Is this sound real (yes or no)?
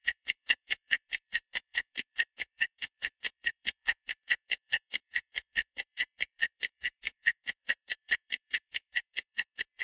no